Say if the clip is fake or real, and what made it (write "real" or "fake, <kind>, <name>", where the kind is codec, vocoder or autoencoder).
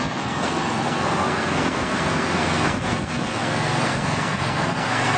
fake, codec, SNAC